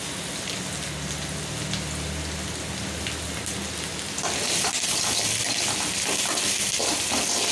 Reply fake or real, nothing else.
real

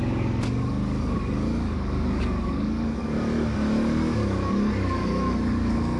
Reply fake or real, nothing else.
fake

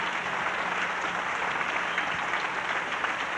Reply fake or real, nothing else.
real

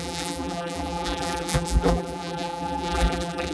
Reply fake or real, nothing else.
fake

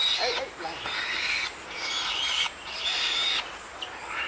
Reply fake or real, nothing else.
real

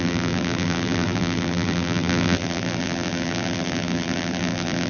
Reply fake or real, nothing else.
fake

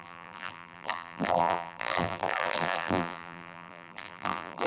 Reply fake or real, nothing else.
fake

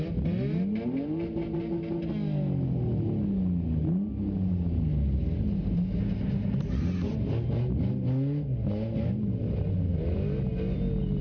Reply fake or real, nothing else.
real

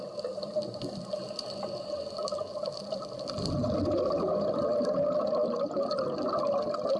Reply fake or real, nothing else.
real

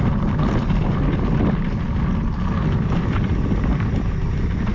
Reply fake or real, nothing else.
real